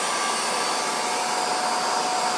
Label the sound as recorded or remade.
remade